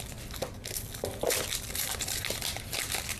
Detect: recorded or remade recorded